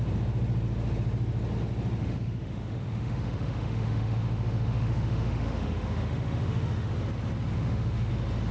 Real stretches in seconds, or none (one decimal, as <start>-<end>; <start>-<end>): 0.0-2.0; 6.9-7.5; 8.1-8.5